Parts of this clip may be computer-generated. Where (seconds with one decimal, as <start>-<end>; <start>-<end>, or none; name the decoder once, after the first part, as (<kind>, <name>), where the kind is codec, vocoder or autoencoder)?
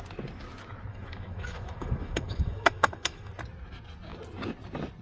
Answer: 0.9-3.3 (autoencoder, DAC-VAE)